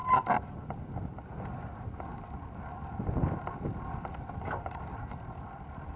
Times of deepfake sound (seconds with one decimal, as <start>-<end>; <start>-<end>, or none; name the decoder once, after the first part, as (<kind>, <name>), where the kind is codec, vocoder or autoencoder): none